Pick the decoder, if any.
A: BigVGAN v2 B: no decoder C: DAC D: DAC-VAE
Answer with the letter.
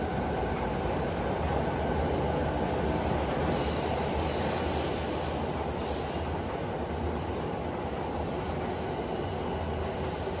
B